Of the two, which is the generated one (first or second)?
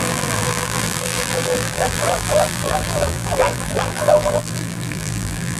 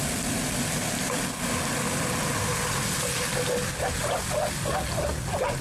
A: first